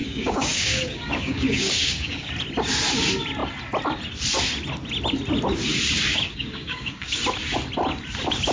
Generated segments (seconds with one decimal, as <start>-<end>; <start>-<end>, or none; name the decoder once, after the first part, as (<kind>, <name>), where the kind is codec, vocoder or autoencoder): 0.0-2.3 (codec, DAC); 6.1-7.2